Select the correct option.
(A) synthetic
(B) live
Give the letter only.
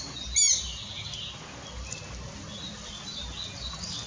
B